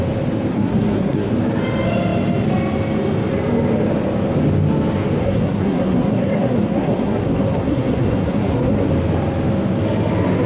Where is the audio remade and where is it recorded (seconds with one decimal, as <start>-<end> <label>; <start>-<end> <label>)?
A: 0.0-0.5 recorded; 0.5-1.3 remade; 1.3-5.2 recorded; 5.2-8.9 remade; 8.9-10.5 recorded